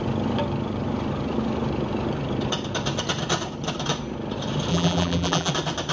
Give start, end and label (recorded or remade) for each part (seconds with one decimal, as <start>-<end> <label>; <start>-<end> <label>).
0.0-4.7 recorded; 4.7-5.5 remade; 5.5-5.9 recorded

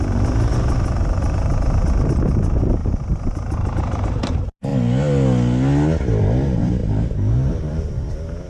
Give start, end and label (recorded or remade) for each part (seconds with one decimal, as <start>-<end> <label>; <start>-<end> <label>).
0.0-4.7 remade; 4.7-6.2 recorded; 6.2-8.5 remade

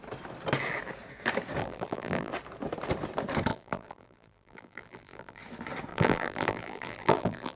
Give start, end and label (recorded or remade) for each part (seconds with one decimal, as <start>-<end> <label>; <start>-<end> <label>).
0.0-1.6 recorded; 1.6-2.3 remade; 2.3-3.5 recorded; 3.5-5.4 remade; 5.4-5.9 recorded; 5.9-7.6 remade